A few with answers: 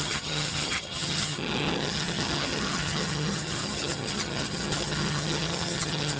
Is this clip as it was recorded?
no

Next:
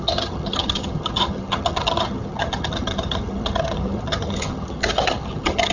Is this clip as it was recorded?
no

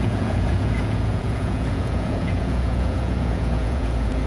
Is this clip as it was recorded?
no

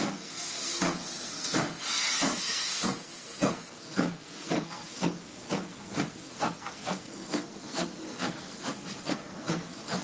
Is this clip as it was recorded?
no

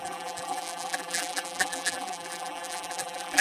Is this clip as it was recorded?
no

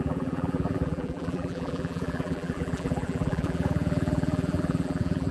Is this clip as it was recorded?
no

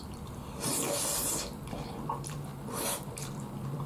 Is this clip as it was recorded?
no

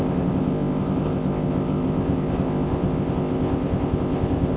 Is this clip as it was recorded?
no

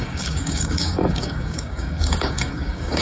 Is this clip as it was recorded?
no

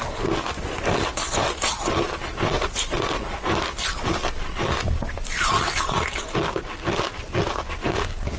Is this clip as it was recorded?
yes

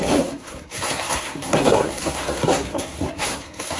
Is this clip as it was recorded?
no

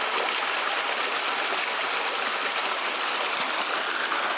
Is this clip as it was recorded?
yes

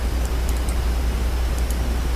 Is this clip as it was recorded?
yes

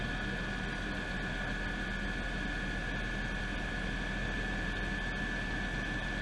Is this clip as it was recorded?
yes